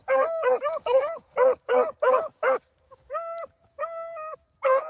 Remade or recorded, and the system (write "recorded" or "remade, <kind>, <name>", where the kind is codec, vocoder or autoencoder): remade, codec, DAC